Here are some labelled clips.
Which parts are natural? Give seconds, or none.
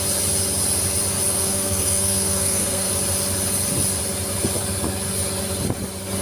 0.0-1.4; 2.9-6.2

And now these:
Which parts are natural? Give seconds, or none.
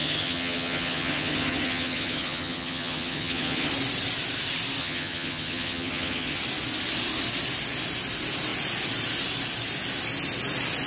3.7-4.8; 6.4-10.9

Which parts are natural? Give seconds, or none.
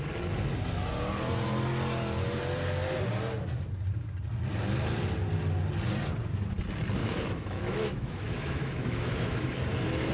0.0-7.0; 9.5-10.1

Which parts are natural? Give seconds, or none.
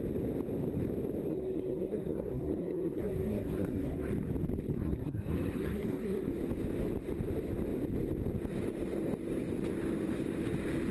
0.0-1.3; 4.1-4.7; 6.3-10.9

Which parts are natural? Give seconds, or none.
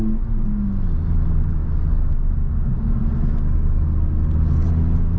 0.0-5.2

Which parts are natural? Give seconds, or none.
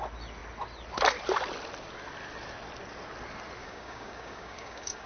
0.0-3.6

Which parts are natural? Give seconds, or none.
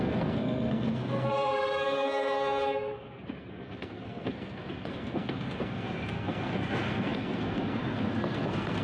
none